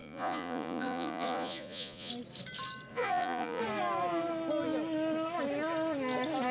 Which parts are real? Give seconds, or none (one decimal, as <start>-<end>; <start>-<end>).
2.1-2.9; 3.6-6.5